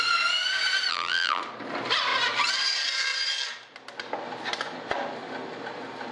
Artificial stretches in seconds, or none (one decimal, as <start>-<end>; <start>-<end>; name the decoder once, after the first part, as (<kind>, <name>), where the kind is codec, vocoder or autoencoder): 0.9-1.4 (vocoder, BigVGAN v2)